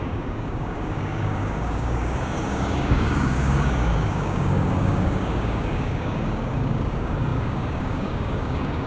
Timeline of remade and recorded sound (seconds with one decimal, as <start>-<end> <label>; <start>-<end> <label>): 0.0-8.9 remade

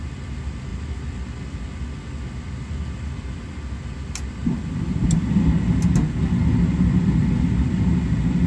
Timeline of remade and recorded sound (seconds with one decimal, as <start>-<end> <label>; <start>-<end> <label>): 0.0-8.5 recorded

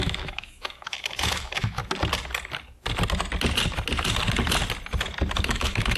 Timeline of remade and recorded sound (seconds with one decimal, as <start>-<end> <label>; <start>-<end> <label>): 0.0-1.8 remade; 1.8-5.4 recorded; 5.4-6.0 remade